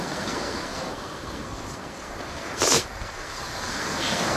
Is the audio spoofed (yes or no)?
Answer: yes